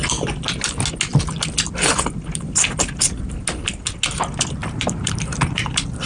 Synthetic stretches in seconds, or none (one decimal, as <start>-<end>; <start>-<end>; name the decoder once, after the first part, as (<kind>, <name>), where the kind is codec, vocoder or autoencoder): 4.6-6.1 (vocoder, BigVGAN v2)